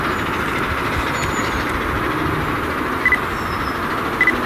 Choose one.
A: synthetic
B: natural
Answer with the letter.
B